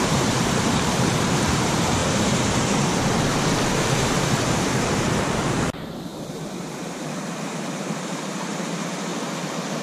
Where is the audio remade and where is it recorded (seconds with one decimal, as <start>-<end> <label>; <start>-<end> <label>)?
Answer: 0.0-9.1 remade; 9.1-9.8 recorded